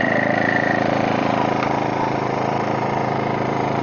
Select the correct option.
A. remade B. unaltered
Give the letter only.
A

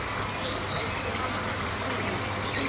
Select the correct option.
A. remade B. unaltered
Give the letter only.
B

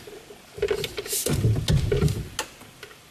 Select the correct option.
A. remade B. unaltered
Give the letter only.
B